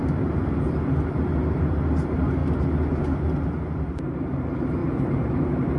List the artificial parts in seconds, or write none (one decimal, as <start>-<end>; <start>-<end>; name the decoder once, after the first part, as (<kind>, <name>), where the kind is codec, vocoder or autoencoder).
4.8-5.8 (vocoder, BigVGAN v2)